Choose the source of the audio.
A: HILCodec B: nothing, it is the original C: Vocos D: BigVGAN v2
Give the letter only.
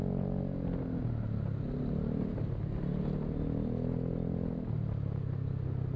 B